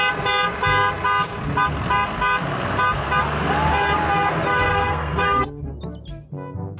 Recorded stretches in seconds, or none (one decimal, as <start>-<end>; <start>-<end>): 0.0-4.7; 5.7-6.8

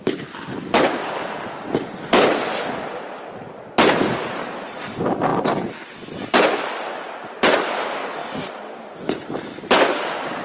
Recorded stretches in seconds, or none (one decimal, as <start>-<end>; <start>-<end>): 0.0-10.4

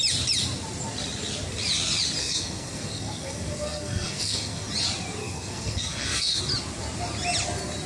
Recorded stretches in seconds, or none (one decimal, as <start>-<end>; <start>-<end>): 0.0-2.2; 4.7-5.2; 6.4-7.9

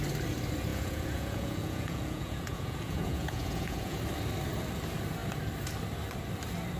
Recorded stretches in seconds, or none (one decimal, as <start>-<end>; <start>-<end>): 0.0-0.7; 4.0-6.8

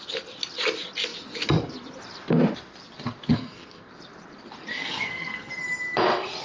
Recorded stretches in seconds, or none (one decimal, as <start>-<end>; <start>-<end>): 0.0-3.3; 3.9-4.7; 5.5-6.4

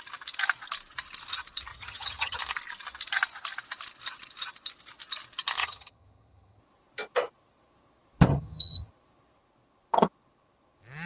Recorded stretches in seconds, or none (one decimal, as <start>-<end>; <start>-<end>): 0.0-1.7; 2.4-5.6; 6.6-8.3; 8.9-11.1

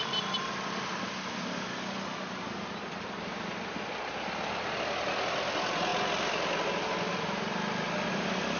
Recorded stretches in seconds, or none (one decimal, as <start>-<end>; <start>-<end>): 0.0-8.6